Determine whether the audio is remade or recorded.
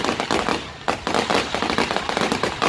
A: recorded